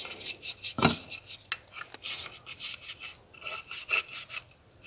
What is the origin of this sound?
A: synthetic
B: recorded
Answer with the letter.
B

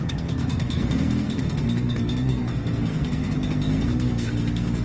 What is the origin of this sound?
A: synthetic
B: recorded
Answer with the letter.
A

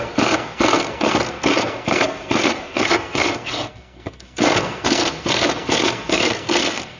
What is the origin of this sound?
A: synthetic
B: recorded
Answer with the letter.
A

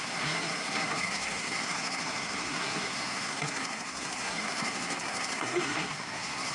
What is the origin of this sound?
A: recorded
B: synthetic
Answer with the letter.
B